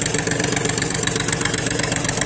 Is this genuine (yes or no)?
no